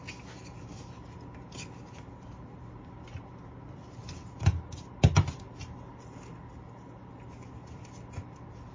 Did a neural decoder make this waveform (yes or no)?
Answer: no